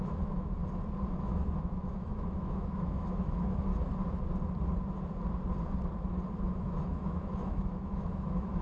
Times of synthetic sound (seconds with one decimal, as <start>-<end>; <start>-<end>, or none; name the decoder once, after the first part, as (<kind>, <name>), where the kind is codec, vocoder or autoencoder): 0.0-0.6 (autoencoder, DAC-VAE); 1.2-3.7; 6.4-8.6